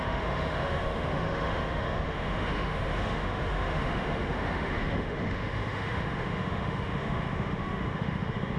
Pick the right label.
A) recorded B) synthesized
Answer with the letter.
B